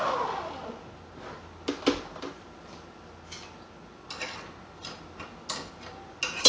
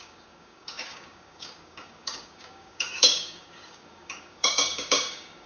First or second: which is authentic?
first